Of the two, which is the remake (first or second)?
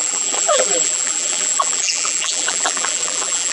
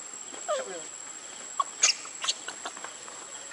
first